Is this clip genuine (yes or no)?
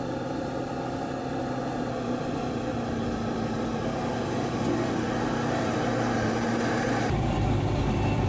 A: no